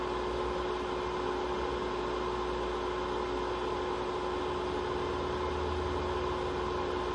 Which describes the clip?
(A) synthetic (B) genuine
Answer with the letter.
B